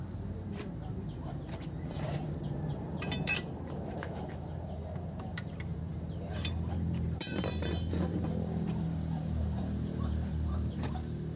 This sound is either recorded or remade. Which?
remade